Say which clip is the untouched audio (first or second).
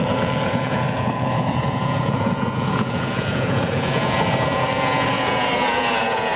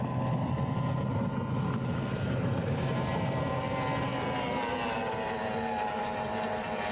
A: second